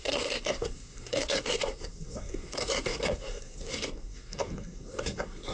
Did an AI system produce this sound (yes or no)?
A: yes